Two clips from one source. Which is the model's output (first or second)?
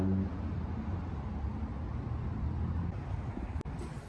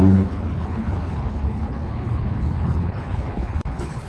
second